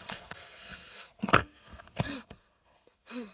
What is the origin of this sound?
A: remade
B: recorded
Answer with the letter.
A